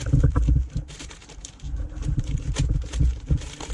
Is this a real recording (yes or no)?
yes